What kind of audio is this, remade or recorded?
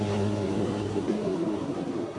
remade